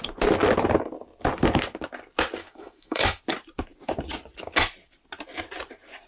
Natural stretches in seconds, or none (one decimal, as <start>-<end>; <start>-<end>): 0.0-2.4; 3.2-6.1

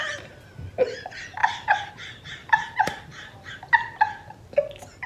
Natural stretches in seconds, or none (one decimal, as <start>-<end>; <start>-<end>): 0.0-1.4; 1.9-2.4; 3.7-5.1